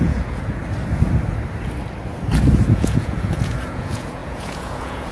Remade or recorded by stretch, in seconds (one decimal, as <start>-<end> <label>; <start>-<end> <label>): 0.0-0.6 remade; 0.6-2.7 recorded; 2.7-5.1 remade